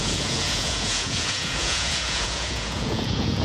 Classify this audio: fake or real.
fake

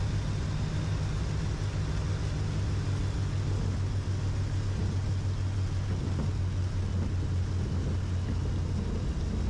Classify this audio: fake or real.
real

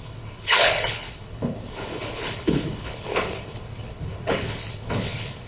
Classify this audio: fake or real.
fake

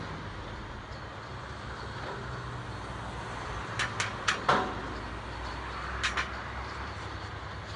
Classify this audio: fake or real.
real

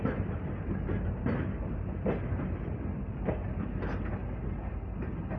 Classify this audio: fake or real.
real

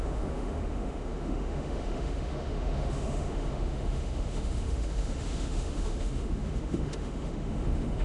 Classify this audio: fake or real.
fake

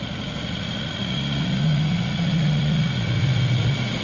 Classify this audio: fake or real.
fake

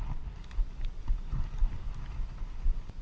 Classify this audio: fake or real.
fake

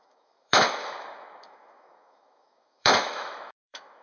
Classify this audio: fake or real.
fake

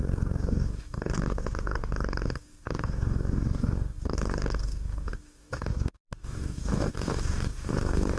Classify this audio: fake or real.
fake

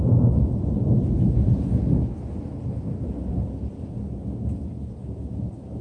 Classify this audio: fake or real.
real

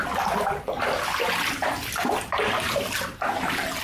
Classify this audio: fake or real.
real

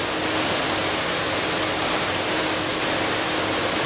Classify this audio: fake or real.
real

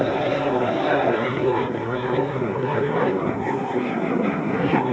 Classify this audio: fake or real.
fake